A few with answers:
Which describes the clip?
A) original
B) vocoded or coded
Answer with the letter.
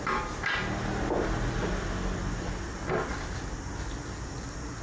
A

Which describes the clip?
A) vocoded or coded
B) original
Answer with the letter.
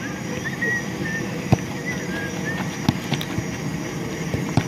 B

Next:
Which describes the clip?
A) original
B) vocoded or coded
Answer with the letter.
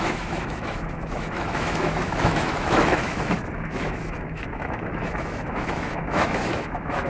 B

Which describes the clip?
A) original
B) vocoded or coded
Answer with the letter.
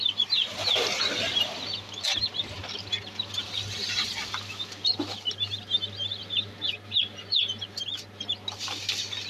A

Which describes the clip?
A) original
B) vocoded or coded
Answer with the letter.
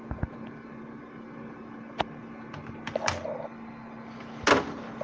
A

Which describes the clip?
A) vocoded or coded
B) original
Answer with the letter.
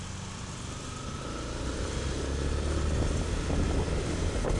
B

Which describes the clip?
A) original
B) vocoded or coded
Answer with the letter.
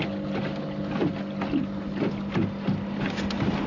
A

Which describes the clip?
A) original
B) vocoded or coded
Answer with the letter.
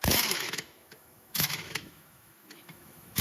B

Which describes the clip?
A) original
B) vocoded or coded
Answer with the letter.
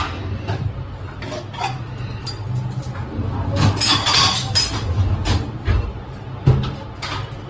A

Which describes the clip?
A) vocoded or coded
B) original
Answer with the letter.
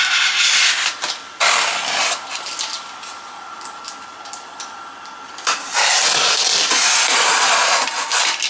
B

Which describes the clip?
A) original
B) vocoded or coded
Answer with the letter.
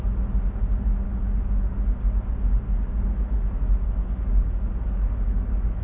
A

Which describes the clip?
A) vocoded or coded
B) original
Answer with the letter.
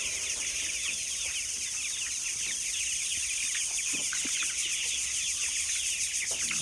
B